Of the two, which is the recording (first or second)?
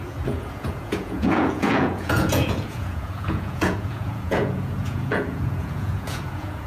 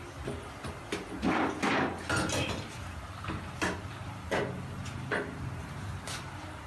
second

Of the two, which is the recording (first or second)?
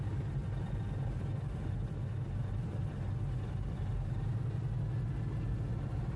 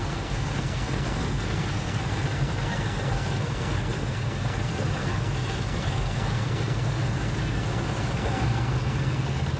first